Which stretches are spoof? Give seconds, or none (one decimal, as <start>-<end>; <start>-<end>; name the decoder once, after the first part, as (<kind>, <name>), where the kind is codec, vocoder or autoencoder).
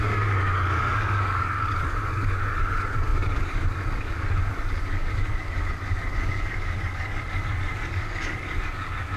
0.0-9.2 (codec, DAC)